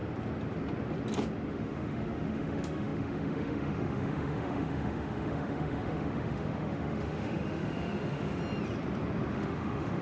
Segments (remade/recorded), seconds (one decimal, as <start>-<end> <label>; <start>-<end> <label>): 0.0-1.5 recorded; 1.5-8.4 remade; 8.4-9.3 recorded; 9.3-10.0 remade